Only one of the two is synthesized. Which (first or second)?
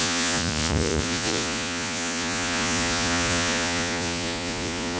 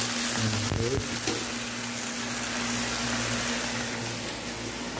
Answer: first